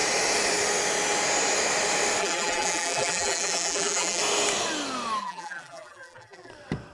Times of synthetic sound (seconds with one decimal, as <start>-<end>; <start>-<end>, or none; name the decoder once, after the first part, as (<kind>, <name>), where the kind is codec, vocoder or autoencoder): 2.2-4.2 (vocoder, BigVGAN v2); 5.2-6.5